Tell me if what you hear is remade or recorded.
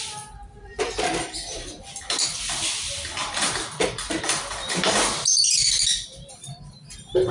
recorded